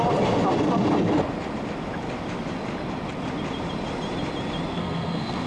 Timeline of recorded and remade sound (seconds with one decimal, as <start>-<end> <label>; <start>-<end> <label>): 0.0-4.7 recorded; 4.7-5.5 remade